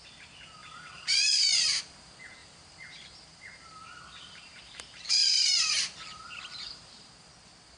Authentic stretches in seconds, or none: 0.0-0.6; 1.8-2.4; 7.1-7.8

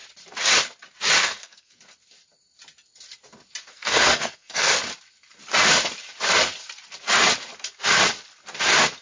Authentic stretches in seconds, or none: 0.0-1.2; 1.8-3.7; 4.8-9.0

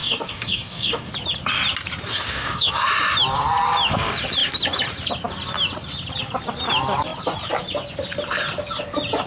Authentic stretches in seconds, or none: 1.1-2.1; 2.7-9.3

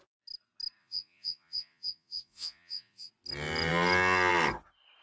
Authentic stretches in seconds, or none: 0.0-0.8; 3.1-5.0

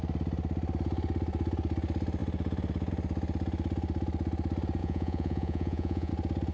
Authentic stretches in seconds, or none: 0.0-4.8; 6.1-6.5

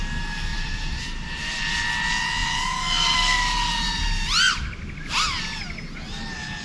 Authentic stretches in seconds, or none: 0.0-0.5; 1.6-6.6